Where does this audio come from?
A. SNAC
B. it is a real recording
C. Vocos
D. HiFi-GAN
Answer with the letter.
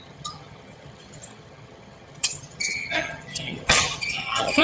D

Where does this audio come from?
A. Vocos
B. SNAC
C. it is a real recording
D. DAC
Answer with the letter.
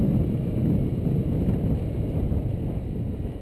C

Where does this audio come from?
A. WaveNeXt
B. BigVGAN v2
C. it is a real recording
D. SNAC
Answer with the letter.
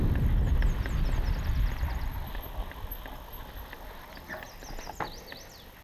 C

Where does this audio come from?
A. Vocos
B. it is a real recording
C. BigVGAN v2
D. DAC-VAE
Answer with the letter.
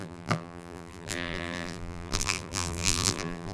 C